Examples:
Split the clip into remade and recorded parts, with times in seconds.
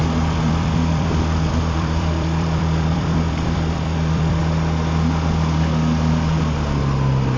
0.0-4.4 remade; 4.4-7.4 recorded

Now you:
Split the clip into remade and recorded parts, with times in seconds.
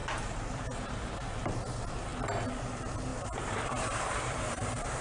0.0-1.5 remade; 1.5-3.1 recorded; 3.1-5.0 remade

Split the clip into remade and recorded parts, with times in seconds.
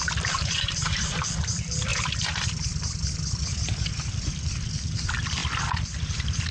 0.0-1.9 remade; 1.9-3.9 recorded; 3.9-5.4 remade; 5.4-6.1 recorded; 6.1-6.5 remade